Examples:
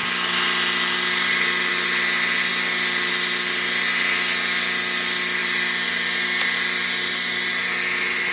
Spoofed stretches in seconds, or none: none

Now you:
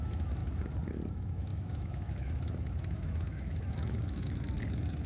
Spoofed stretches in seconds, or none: 0.0-0.4 (autoencoder, DAC-VAE); 1.1-5.1

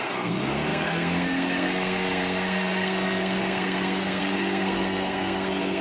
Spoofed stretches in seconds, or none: 0.0-5.8 (codec, SNAC)

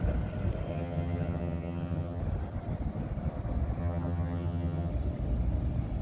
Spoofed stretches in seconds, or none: 0.7-2.2 (vocoder, HiFi-GAN); 3.8-4.9

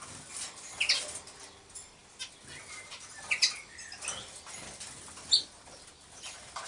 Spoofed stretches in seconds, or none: none